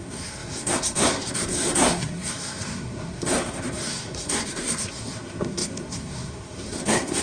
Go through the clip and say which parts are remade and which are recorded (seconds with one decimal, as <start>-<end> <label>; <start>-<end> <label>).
0.0-7.2 remade